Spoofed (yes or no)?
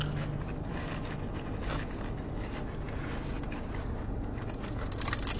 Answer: no